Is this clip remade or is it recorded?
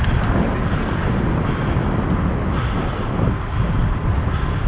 recorded